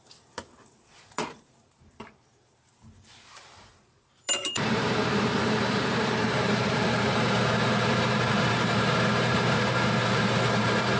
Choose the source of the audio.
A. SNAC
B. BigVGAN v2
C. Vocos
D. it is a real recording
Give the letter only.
B